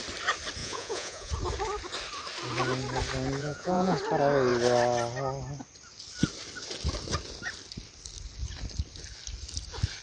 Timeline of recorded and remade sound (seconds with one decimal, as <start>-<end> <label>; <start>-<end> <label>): 0.0-0.6 recorded; 0.6-1.3 remade; 1.3-3.4 recorded; 3.4-4.0 remade; 4.0-10.0 recorded